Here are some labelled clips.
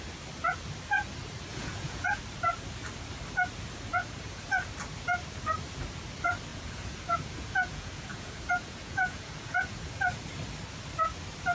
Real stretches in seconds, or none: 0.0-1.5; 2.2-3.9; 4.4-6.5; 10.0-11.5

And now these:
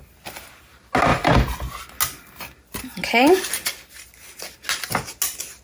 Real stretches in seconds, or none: 0.0-5.6